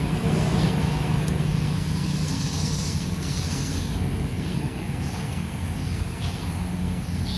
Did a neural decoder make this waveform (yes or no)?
yes